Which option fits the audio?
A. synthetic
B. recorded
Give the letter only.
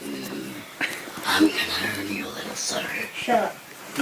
B